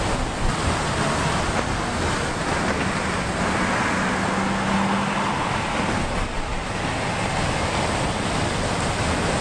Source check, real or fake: real